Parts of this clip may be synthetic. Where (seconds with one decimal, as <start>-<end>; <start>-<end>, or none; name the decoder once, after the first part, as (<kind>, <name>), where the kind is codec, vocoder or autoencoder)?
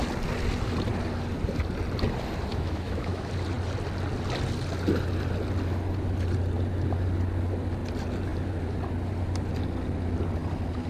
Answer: 2.5-3.3 (autoencoder, DAC-VAE)